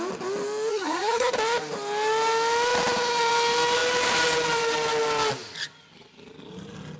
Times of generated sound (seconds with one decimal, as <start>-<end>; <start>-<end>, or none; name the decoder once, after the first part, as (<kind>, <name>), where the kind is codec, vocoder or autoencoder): 0.7-1.3 (codec, SNAC)